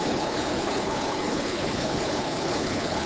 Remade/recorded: remade